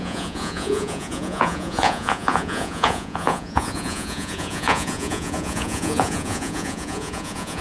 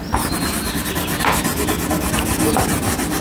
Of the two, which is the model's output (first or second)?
first